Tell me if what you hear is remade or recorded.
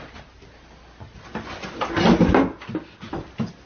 recorded